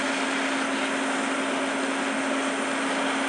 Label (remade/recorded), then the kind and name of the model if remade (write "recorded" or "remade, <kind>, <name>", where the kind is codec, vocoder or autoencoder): recorded